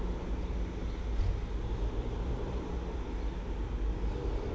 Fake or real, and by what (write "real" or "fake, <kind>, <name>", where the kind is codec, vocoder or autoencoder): real